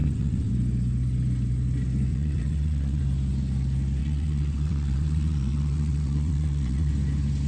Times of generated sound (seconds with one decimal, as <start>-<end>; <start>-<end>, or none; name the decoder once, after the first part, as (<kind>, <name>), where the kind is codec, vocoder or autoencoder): 0.0-0.5 (vocoder, WaveNeXt); 2.1-3.0; 4.0-6.9